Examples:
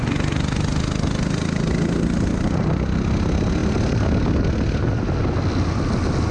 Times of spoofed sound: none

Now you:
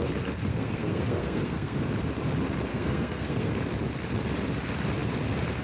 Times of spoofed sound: 0.5-1.8; 2.7-3.5